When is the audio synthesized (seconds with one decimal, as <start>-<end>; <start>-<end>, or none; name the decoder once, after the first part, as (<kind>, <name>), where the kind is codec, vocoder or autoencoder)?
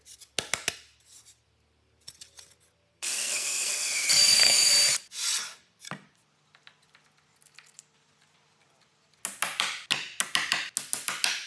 2.9-4.7 (codec, SNAC)